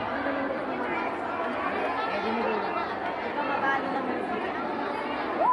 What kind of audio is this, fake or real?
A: real